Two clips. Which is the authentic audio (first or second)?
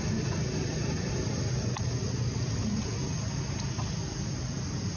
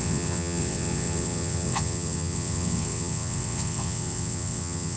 first